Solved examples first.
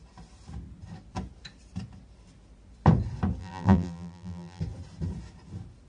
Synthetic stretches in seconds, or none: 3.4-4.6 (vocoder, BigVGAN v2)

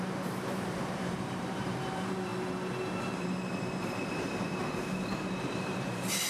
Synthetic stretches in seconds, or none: 0.0-2.3 (vocoder, BigVGAN v2); 3.0-4.6; 5.4-6.3

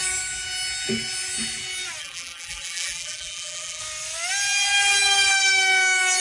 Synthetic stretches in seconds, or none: 2.0-3.8 (vocoder, BigVGAN v2)

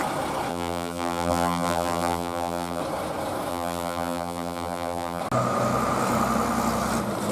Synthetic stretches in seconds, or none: 0.5-2.8 (vocoder, BigVGAN v2); 3.5-5.2